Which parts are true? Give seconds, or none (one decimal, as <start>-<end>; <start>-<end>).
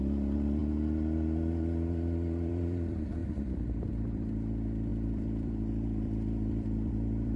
0.6-2.5